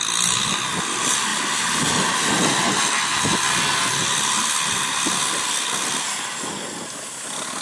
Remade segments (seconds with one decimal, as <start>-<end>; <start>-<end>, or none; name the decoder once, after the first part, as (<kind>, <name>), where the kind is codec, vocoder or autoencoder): none